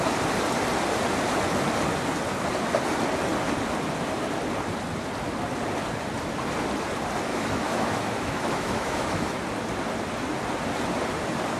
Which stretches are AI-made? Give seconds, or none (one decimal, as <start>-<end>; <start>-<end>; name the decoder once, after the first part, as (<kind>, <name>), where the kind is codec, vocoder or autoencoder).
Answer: 7.3-9.4 (autoencoder, DAC-VAE)